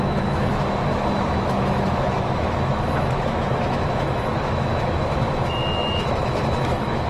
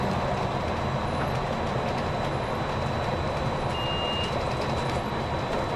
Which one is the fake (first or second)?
first